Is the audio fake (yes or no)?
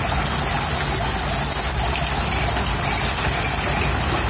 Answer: no